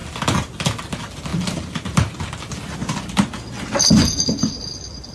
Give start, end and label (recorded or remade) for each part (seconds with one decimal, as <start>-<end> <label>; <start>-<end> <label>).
0.0-1.3 recorded; 1.3-2.2 remade; 2.2-5.1 recorded